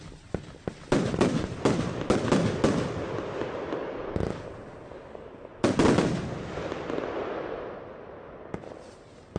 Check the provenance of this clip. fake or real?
real